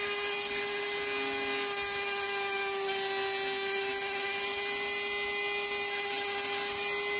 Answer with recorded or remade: recorded